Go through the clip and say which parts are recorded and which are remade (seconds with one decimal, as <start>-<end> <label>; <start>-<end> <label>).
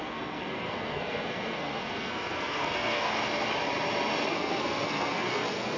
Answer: 0.0-3.1 remade; 3.1-4.3 recorded; 4.3-5.8 remade